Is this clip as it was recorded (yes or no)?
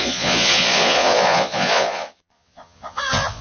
no